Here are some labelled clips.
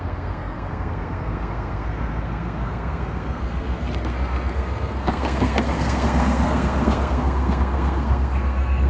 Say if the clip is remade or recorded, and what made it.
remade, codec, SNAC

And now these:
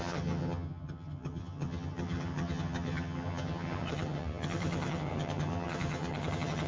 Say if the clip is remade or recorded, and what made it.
remade, vocoder, HiFi-GAN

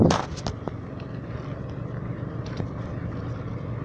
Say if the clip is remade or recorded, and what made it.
recorded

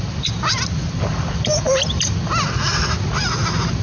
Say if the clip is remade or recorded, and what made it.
remade, vocoder, BigVGAN v2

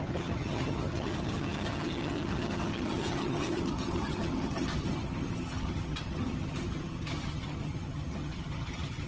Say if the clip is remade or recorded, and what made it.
remade, vocoder, HiFi-GAN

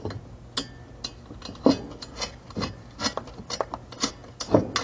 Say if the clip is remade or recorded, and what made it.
recorded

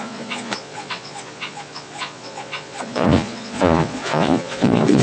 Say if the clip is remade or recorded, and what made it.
remade, vocoder, Vocos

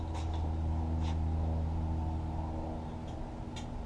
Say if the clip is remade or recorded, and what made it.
recorded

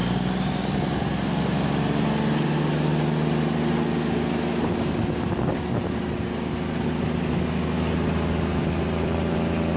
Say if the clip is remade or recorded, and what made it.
recorded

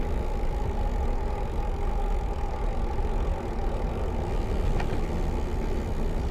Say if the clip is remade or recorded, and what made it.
recorded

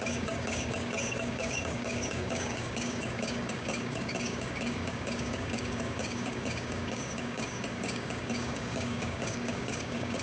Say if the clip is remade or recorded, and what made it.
remade, codec, DAC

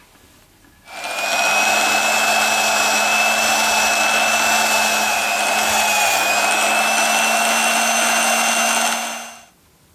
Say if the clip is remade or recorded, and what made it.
recorded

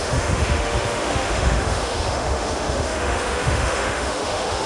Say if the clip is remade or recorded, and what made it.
remade, autoencoder, DAC-VAE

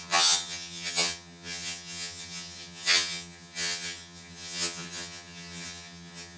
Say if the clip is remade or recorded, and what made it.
remade, vocoder, HiFi-GAN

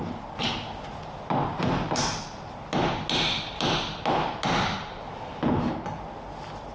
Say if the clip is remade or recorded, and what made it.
recorded